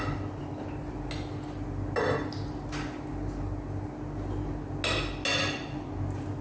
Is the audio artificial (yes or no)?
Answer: no